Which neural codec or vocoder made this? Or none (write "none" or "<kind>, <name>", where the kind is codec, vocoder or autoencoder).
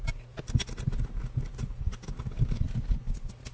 none